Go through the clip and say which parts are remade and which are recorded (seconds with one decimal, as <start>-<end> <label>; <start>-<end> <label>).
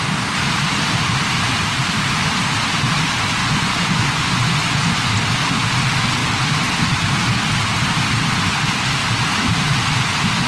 0.0-3.4 recorded; 3.4-5.1 remade; 5.1-10.5 recorded